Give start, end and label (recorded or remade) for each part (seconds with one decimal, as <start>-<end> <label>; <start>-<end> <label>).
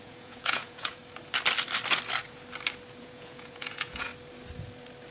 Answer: 0.0-1.0 remade; 1.0-3.0 recorded; 3.0-4.1 remade; 4.1-5.1 recorded